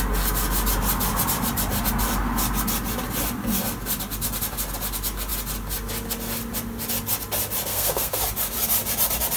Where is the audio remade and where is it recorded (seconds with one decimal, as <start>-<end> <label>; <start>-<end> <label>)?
0.0-7.7 recorded; 7.7-8.2 remade; 8.2-9.4 recorded